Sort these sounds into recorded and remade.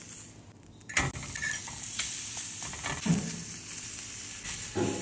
recorded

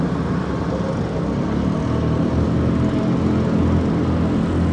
recorded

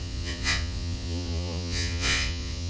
remade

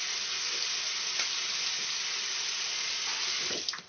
recorded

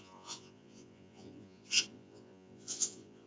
remade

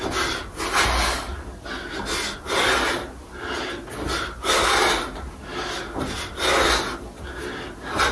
recorded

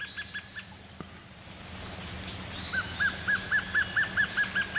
recorded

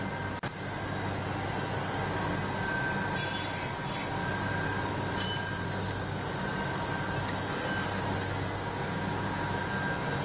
recorded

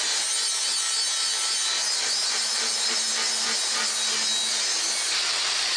recorded